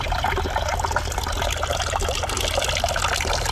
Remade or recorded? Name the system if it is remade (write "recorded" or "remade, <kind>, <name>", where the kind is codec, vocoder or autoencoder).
recorded